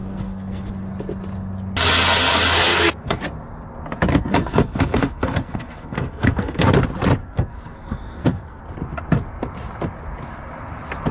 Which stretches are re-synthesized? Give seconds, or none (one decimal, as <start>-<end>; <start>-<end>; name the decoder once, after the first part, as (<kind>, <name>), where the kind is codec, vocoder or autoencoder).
0.0-0.7 (codec, SNAC); 2.7-3.2; 4.1-6.7; 7.2-8.6